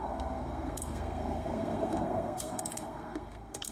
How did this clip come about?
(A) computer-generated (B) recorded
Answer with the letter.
A